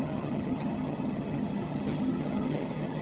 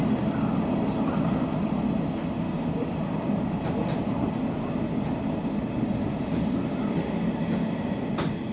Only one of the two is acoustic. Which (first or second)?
second